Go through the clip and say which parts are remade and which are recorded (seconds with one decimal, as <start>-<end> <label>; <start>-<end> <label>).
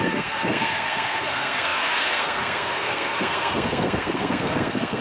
0.0-5.0 remade